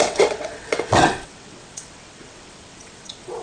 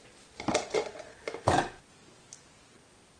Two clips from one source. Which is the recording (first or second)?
second